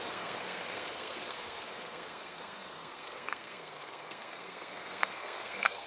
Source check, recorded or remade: remade